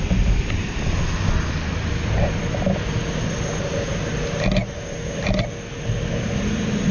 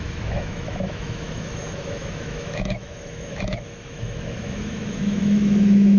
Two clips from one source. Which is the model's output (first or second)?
second